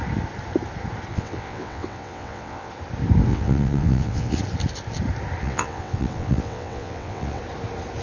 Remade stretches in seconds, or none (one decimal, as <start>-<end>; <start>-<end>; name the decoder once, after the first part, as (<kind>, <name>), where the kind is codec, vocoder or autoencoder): 1.1-2.7 (vocoder, WaveNeXt); 3.3-4.4; 5.4-7.4